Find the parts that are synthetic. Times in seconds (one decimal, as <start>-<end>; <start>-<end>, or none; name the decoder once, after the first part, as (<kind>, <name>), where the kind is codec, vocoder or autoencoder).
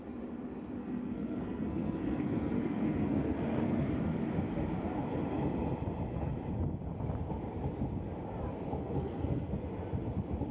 0.8-3.9 (codec, SNAC); 8.8-9.6